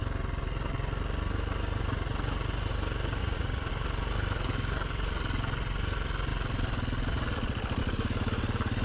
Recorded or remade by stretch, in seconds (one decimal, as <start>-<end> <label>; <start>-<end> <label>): 0.0-3.2 recorded; 3.2-3.7 remade; 3.7-8.8 recorded